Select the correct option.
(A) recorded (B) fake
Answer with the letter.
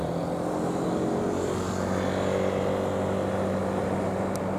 A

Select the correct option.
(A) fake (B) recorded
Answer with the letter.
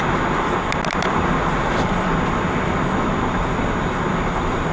B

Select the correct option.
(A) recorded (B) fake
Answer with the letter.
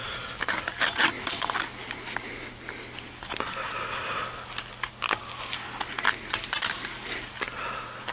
A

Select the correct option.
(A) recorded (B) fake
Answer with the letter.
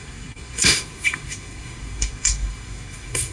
B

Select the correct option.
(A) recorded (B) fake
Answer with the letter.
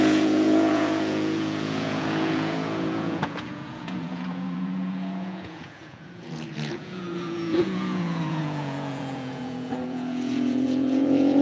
B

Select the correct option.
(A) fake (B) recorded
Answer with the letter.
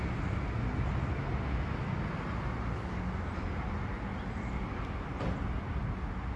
B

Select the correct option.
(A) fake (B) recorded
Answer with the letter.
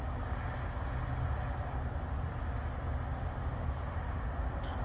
B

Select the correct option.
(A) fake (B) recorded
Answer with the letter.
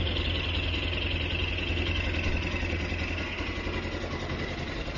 B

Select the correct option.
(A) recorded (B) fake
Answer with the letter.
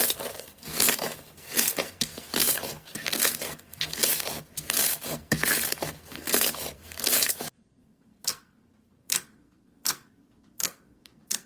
B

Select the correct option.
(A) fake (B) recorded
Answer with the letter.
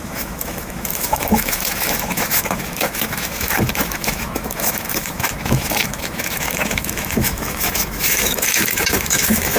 A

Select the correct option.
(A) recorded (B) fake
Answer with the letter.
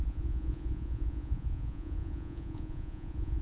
B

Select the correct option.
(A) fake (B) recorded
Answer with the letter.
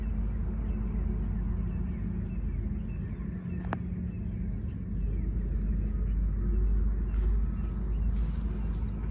B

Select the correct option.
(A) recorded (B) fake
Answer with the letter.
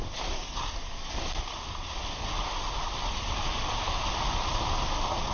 A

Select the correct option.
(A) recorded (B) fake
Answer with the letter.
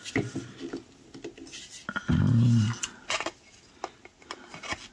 A